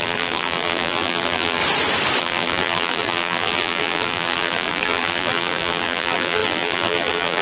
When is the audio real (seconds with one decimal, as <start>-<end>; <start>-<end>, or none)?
1.6-2.2